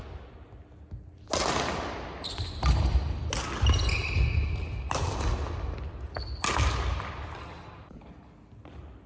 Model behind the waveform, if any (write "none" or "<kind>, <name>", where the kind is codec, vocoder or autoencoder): none